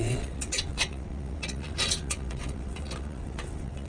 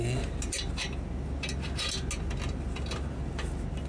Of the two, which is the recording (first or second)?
second